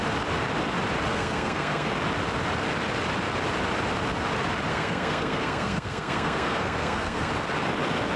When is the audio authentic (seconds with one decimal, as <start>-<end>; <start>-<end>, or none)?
0.0-1.1; 1.9-4.7; 7.3-8.2